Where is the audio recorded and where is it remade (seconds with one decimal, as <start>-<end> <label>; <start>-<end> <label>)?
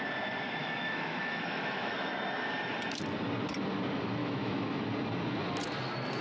0.0-0.6 recorded; 0.6-2.1 remade; 2.1-4.2 recorded; 4.2-4.8 remade; 4.8-6.2 recorded